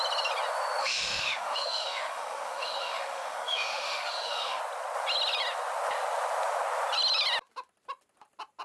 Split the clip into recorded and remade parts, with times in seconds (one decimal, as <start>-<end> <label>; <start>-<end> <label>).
0.0-0.8 recorded; 0.8-4.6 remade; 4.6-8.6 recorded